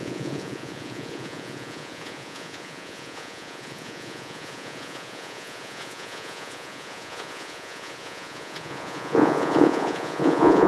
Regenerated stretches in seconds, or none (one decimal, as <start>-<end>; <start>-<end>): 0.0-10.7